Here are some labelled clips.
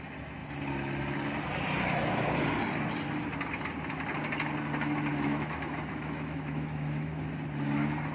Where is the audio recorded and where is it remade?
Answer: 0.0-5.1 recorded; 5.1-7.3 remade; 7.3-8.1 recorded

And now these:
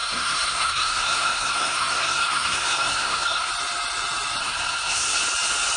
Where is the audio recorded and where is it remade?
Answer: 0.0-3.5 remade; 3.5-4.4 recorded; 4.4-5.2 remade; 5.2-5.8 recorded

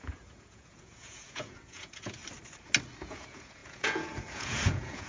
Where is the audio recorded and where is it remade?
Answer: 0.0-2.2 remade; 2.2-3.0 recorded; 3.0-5.1 remade